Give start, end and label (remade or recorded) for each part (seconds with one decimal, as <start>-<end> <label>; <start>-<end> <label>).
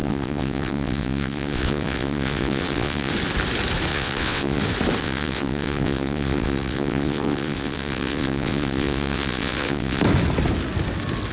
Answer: 0.0-3.1 remade; 3.1-3.9 recorded; 3.9-4.6 remade; 4.6-5.0 recorded; 5.0-10.0 remade; 10.0-11.3 recorded